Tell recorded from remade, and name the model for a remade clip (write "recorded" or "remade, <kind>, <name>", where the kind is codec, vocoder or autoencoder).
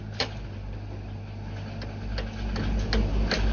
recorded